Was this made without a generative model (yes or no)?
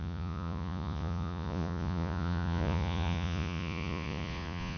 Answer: no